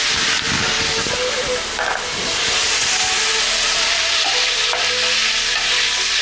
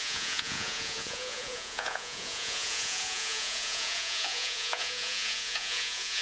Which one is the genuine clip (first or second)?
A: first